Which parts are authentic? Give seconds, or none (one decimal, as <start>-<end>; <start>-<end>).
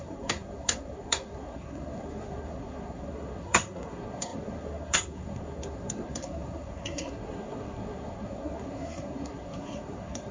none